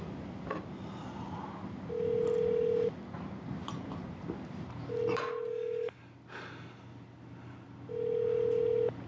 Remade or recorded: recorded